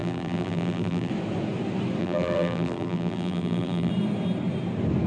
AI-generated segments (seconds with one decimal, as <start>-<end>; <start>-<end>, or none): 0.0-1.1; 2.0-3.9